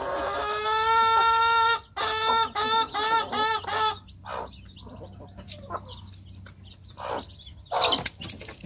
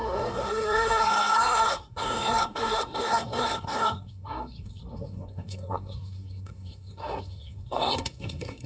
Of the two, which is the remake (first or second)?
second